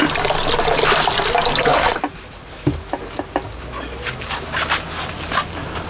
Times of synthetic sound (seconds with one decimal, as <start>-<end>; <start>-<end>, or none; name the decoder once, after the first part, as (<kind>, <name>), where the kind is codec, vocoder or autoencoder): none